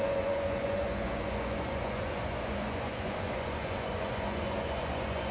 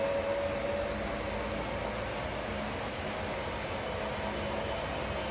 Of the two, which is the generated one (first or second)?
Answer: first